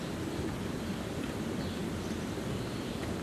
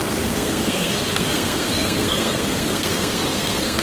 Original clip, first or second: first